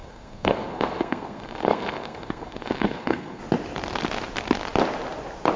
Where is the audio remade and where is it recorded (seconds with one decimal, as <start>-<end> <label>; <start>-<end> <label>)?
0.0-3.4 remade; 3.4-5.6 recorded